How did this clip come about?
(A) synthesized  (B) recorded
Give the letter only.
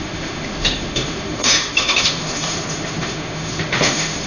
A